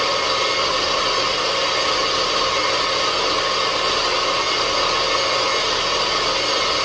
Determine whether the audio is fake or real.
real